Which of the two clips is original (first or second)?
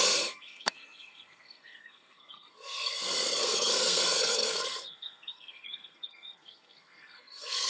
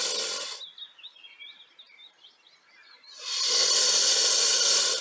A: second